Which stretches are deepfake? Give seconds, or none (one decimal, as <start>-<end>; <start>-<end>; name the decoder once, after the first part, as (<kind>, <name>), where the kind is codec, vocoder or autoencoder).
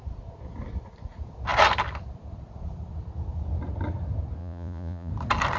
4.4-5.1 (vocoder, Vocos)